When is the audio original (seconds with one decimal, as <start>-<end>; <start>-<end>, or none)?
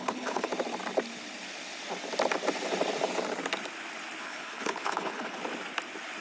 0.5-4.2; 5.4-6.2